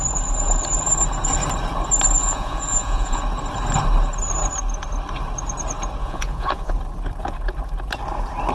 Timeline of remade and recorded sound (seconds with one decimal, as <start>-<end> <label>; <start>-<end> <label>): 0.0-2.2 recorded; 2.2-3.2 remade; 3.2-6.0 recorded; 6.0-6.7 remade; 6.7-8.5 recorded